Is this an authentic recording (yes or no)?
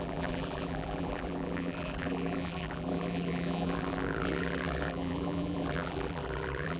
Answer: no